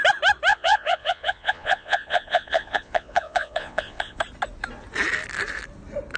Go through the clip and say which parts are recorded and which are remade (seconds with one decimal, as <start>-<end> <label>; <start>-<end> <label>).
0.0-0.5 recorded; 0.5-4.2 remade; 4.2-6.2 recorded